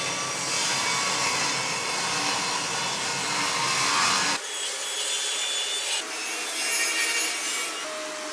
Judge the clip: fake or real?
real